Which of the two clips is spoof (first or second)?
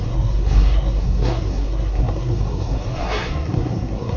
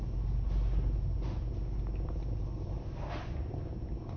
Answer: first